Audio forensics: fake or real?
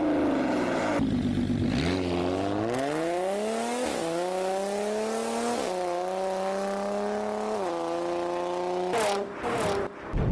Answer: real